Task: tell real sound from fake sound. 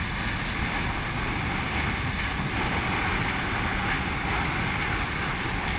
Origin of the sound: real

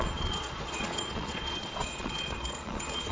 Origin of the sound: fake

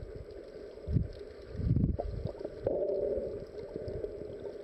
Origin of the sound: real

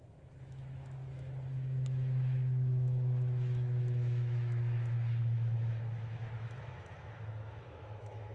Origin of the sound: fake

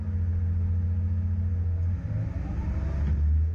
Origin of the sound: real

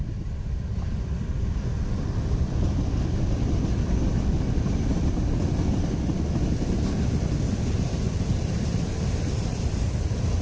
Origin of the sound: fake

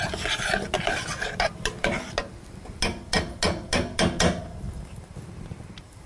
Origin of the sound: real